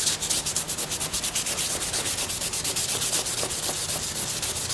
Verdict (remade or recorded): recorded